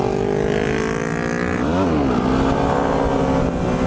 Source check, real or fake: real